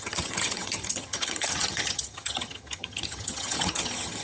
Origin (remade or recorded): remade